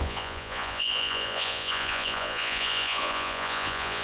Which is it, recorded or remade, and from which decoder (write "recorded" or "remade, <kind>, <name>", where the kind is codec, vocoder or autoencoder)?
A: remade, vocoder, Vocos